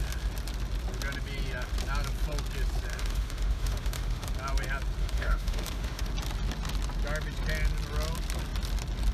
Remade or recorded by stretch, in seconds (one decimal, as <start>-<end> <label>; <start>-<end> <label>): 0.0-2.9 recorded; 2.9-4.3 remade; 4.3-5.0 recorded; 5.0-6.1 remade; 6.1-9.1 recorded